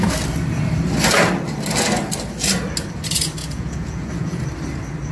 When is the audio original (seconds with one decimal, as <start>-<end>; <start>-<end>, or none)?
0.0-3.4; 4.4-5.1